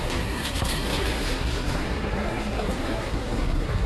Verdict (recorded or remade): remade